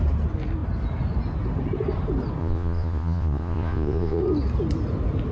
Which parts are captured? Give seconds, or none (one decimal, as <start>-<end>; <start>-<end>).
0.0-2.4; 4.2-5.3